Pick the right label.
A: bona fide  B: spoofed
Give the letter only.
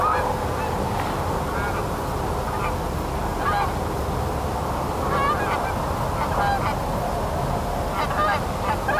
A